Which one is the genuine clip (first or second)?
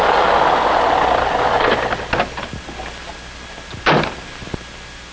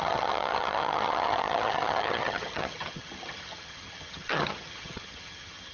first